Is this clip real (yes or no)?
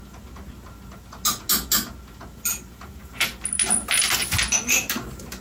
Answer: yes